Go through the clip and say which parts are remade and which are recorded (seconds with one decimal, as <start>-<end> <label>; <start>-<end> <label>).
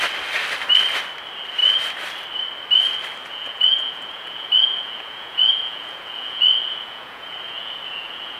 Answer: 0.0-3.2 recorded; 3.2-8.4 remade